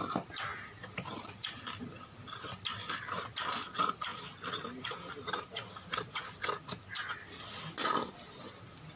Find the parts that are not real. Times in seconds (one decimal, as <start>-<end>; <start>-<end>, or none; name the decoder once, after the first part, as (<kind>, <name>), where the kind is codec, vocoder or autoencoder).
none